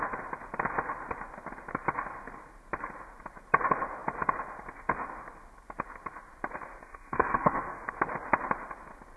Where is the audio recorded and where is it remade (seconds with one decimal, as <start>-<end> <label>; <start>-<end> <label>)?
0.0-6.8 recorded; 6.8-7.9 remade; 7.9-9.2 recorded